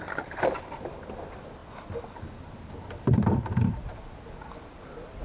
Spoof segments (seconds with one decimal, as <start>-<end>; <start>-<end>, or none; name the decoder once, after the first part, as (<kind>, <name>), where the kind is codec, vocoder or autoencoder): none